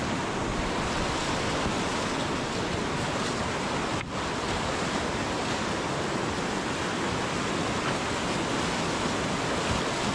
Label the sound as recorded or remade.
recorded